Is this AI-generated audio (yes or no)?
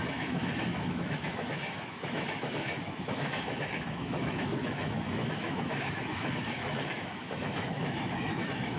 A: yes